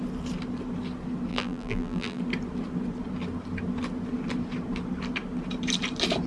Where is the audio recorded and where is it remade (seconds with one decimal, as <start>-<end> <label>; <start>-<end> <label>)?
0.0-1.3 recorded; 1.3-2.2 remade; 2.2-6.3 recorded